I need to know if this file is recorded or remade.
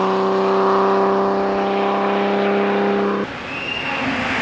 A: recorded